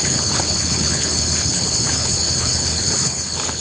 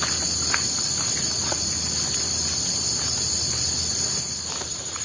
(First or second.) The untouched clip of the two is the second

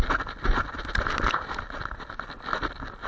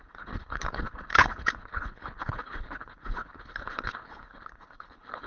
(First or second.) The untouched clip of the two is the first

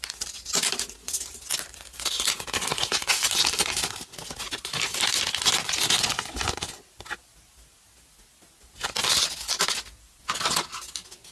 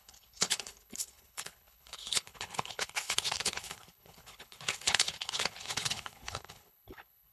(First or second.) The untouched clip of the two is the first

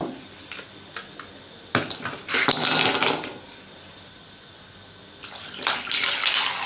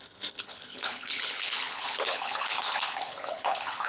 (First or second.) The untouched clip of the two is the first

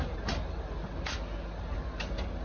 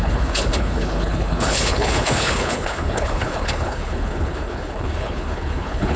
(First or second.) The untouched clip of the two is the first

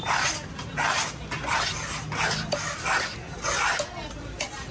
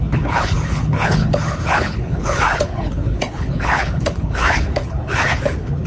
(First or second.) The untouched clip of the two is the first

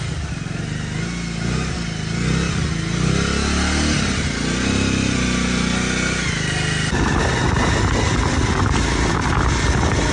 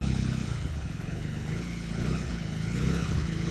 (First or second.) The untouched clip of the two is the first